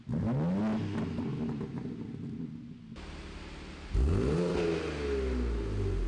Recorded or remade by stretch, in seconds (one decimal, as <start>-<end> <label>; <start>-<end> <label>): 0.0-6.1 recorded